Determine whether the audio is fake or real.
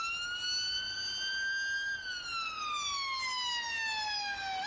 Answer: real